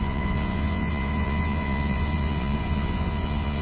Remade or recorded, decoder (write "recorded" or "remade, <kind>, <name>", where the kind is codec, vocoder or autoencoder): remade, vocoder, Vocos